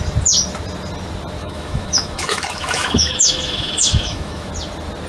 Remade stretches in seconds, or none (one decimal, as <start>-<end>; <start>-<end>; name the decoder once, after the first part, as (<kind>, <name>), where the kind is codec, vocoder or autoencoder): 1.4-4.5 (autoencoder, DAC-VAE)